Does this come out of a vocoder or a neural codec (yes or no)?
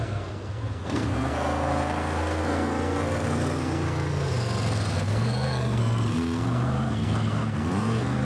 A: yes